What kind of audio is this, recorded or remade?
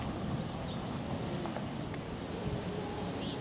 recorded